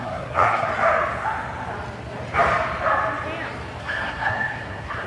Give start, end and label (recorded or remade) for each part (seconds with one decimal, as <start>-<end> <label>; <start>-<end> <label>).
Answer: 0.0-0.7 remade; 0.7-3.8 recorded; 3.8-5.1 remade